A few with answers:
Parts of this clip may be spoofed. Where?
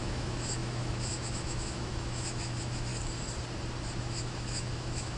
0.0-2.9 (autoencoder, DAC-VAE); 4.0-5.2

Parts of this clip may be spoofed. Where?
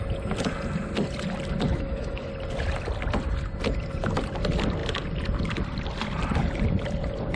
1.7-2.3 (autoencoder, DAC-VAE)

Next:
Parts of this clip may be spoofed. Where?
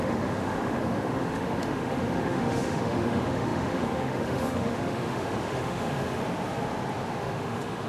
0.0-6.2 (autoencoder, DAC-VAE); 7.1-7.9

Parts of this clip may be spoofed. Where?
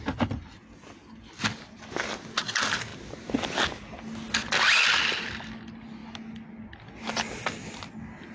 none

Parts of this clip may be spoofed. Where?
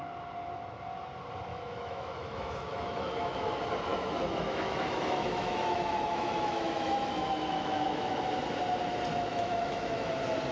1.5-3.5 (autoencoder, DAC-VAE); 3.9-8.3; 9.1-10.1